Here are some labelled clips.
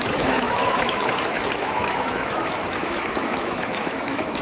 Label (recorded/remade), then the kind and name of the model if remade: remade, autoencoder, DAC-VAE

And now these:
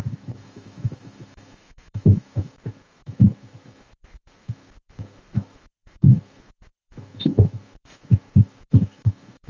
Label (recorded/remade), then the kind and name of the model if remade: remade, autoencoder, DAC-VAE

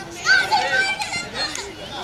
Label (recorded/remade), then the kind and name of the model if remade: recorded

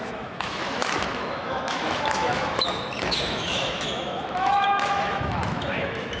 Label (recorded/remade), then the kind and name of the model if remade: remade, autoencoder, DAC-VAE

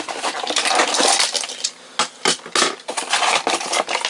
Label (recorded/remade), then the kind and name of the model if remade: recorded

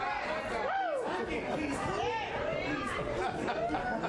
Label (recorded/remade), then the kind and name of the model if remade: recorded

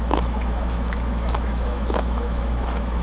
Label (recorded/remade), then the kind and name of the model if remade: remade, autoencoder, DAC-VAE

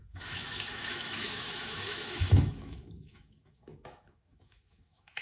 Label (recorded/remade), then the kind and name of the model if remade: remade, autoencoder, DAC-VAE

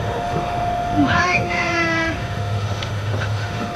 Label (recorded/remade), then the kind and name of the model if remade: remade, autoencoder, DAC-VAE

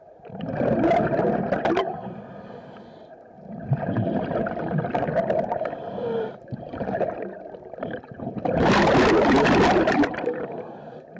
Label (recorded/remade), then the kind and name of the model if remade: recorded